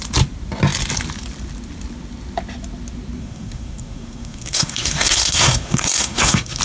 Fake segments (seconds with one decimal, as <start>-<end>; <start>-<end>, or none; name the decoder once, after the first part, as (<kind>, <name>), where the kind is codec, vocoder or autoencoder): 3.2-6.6 (codec, SNAC)